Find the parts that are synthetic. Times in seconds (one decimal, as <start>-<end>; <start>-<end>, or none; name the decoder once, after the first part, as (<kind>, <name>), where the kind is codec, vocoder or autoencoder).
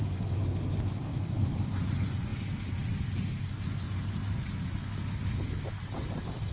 1.1-1.7 (vocoder, BigVGAN v2)